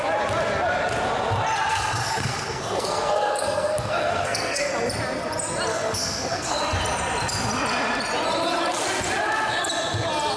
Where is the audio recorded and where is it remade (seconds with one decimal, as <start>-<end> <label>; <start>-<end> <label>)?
0.0-1.7 recorded; 1.7-4.7 remade; 4.7-5.7 recorded; 5.7-6.6 remade; 6.6-10.4 recorded